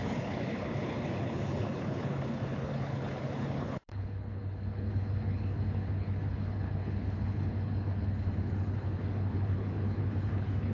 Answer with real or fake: fake